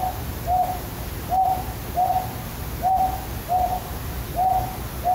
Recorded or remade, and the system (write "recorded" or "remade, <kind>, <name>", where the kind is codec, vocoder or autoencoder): recorded